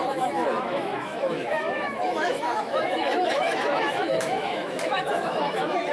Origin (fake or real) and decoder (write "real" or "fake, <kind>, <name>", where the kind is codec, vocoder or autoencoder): fake, autoencoder, DAC-VAE